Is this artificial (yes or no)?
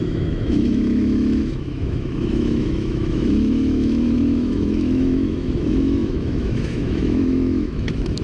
yes